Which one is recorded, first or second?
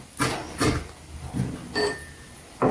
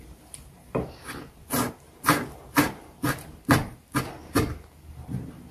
first